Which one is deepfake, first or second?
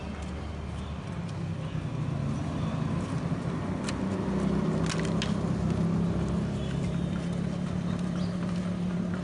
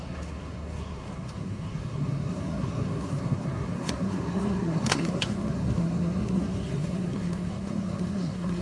second